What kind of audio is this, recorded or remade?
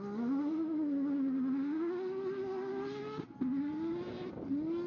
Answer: recorded